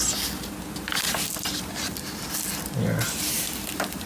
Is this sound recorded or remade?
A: recorded